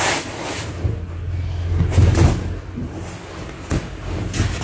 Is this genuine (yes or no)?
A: yes